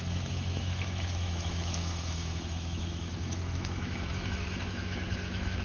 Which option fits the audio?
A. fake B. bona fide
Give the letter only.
A